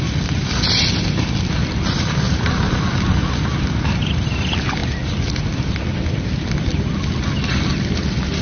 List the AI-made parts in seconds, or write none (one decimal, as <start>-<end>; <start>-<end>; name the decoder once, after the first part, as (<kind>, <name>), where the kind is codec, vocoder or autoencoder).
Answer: none